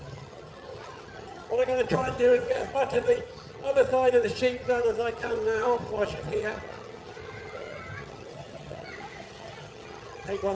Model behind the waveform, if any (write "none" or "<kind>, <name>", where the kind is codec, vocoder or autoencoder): vocoder, HiFi-GAN